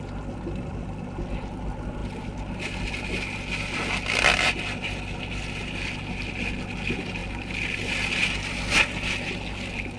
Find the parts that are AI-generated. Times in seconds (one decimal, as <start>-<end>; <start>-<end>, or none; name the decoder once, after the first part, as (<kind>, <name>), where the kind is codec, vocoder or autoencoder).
none